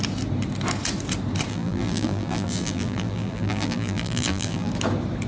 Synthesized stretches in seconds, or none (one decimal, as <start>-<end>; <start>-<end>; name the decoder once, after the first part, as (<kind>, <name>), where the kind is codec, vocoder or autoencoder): 1.5-4.7 (vocoder, BigVGAN v2)